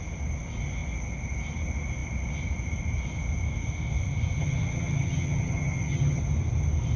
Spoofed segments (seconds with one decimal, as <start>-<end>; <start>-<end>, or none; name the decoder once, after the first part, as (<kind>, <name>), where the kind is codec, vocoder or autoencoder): 4.4-6.2 (vocoder, HiFi-GAN)